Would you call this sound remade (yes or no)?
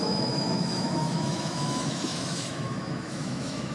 yes